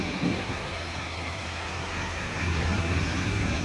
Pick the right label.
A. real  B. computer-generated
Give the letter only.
B